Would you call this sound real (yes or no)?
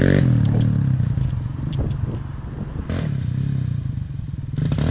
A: yes